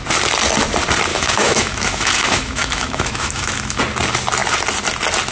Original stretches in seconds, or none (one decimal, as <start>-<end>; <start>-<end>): 0.0-1.1; 3.8-5.3